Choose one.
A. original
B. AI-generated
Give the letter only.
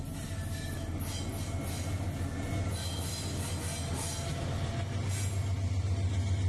A